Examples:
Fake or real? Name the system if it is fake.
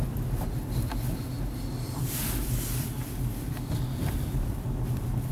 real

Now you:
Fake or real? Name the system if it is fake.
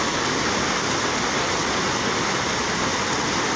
real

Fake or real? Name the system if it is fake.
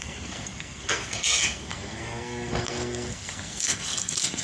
fake, codec, SNAC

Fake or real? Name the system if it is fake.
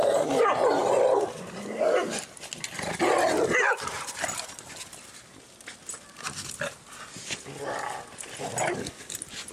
real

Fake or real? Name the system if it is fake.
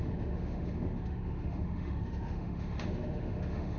fake, autoencoder, DAC-VAE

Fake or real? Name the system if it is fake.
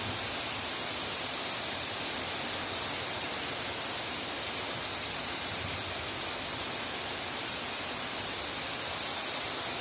real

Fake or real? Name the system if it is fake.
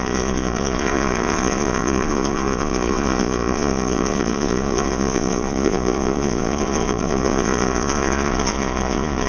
fake, vocoder, Vocos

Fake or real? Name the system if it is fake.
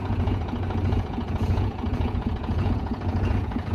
fake, vocoder, Vocos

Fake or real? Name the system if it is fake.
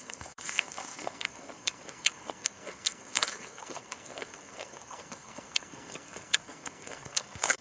fake, codec, SNAC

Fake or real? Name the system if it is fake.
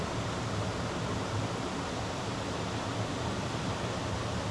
real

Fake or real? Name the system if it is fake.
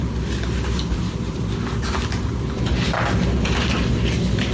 real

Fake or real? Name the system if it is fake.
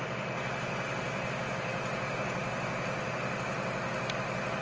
real